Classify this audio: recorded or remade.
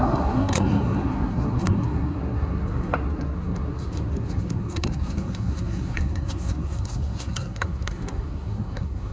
remade